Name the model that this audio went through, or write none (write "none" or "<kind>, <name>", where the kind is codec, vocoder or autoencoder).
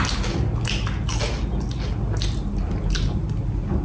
none